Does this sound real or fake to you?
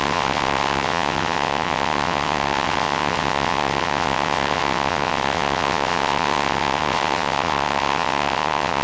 fake